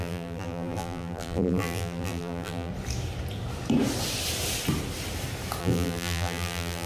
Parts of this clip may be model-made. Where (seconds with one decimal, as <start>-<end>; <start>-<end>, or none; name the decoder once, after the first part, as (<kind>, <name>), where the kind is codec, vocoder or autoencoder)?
0.0-2.7 (vocoder, BigVGAN v2); 5.6-6.9